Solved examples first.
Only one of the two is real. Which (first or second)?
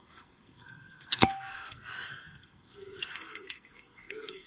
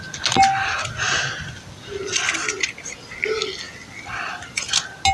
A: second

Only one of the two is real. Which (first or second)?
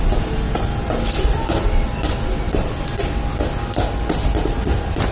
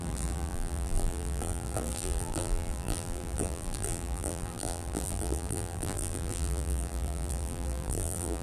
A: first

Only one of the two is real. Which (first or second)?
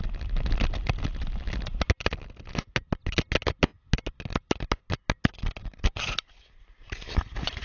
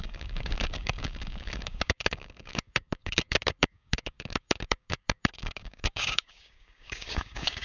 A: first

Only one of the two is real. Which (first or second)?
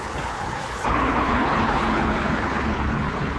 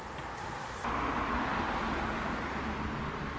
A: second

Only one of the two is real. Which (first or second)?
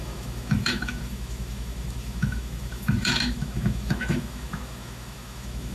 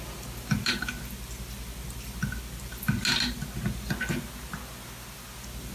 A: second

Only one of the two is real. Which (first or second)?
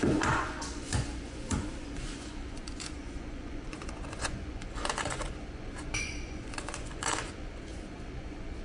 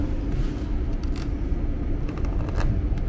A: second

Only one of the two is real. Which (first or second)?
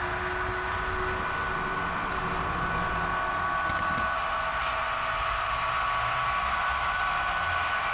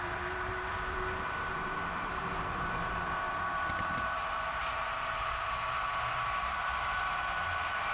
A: first